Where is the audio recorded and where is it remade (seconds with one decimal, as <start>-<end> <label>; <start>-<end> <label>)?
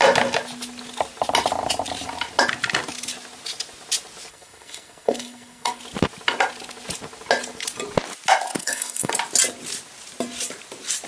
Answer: 0.0-4.3 recorded; 4.3-5.8 remade; 5.8-8.6 recorded; 8.6-9.1 remade; 9.1-11.1 recorded